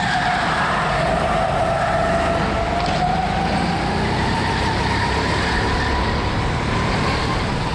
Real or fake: real